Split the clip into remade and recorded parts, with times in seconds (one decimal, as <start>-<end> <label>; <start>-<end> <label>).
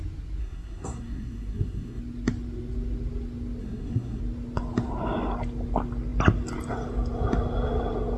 0.0-0.4 recorded; 0.4-2.0 remade; 2.0-3.6 recorded; 3.6-4.2 remade; 4.2-8.2 recorded